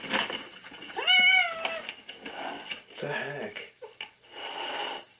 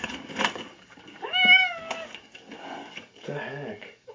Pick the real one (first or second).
first